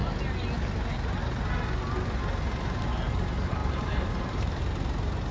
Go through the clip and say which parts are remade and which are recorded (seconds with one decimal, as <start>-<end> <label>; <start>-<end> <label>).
0.0-3.6 recorded; 3.6-4.6 remade; 4.6-5.3 recorded